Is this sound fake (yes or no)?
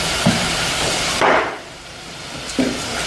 yes